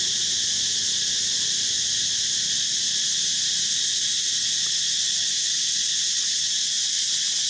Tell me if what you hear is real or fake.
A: real